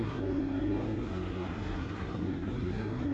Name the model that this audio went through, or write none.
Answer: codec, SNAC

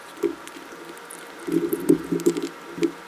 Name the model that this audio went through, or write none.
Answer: none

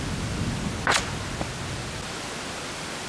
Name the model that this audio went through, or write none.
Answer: none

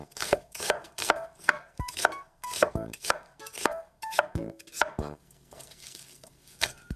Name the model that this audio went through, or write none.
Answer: codec, SNAC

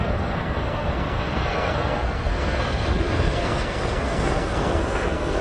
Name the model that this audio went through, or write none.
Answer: codec, SNAC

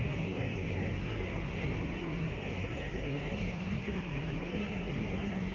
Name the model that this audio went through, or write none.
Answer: codec, SNAC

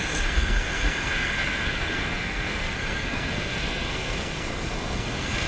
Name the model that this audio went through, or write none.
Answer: codec, SNAC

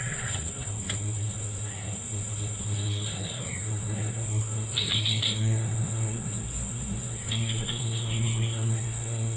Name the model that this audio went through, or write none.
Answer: codec, SNAC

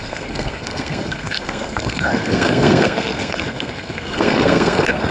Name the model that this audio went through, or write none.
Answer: codec, SNAC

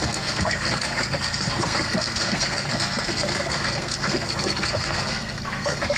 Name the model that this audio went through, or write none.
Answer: codec, SNAC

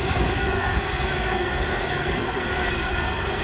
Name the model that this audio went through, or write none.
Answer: codec, SNAC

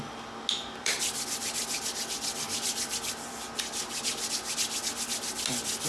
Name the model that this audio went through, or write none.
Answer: none